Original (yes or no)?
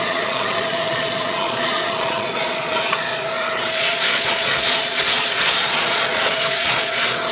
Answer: no